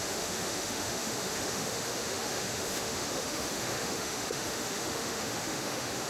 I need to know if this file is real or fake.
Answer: fake